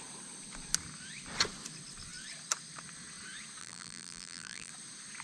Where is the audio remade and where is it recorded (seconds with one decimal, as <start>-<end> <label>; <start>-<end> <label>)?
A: 0.0-3.6 recorded; 3.6-4.7 remade; 4.7-5.2 recorded

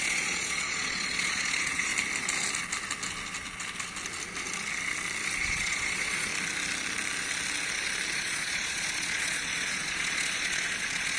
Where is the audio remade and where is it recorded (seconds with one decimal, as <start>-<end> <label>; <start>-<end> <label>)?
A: 0.0-1.9 remade; 1.9-5.4 recorded; 5.4-6.3 remade; 6.3-8.2 recorded; 8.2-11.2 remade

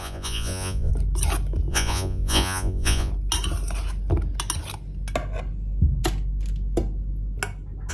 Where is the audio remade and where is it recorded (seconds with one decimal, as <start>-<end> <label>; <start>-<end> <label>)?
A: 0.0-0.9 remade; 0.9-1.7 recorded; 1.7-3.1 remade; 3.1-7.9 recorded

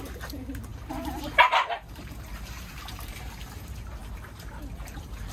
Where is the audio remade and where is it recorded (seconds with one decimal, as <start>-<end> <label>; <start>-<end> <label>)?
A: 0.0-0.7 recorded; 0.7-3.3 remade; 3.3-4.0 recorded; 4.0-4.6 remade; 4.6-5.3 recorded

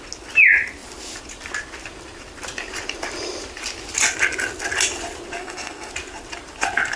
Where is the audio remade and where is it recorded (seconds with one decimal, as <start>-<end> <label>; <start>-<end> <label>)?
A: 0.0-5.4 recorded; 5.4-5.9 remade; 5.9-7.0 recorded